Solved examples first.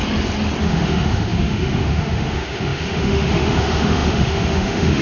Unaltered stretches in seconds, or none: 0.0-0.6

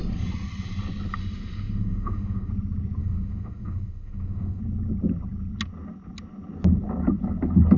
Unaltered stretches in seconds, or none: 0.0-1.2; 2.5-3.0; 4.6-7.8

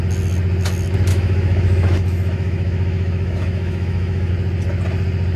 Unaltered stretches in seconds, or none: 0.0-1.1; 4.3-5.4